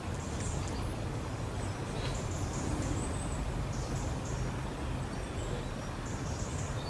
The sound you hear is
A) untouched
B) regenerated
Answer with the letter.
A